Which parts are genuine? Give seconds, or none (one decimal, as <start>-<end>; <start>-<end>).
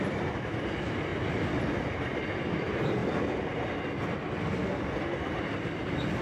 0.0-6.2